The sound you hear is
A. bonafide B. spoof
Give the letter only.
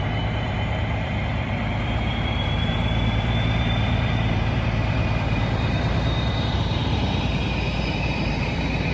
B